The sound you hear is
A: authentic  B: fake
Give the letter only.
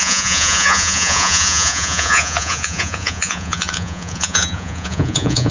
B